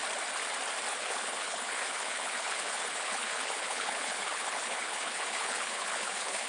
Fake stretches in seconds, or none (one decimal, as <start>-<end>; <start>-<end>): 0.9-6.5